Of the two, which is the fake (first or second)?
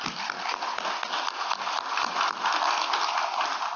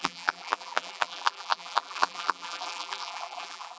second